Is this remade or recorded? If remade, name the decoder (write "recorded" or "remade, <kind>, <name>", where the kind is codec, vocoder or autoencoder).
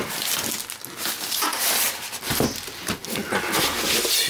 recorded